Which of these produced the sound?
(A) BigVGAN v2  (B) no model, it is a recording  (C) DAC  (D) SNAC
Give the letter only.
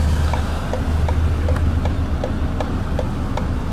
B